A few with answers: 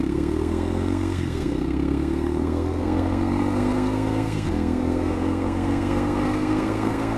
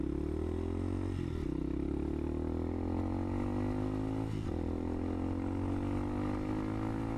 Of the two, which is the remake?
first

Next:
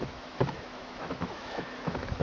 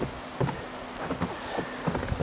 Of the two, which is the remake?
first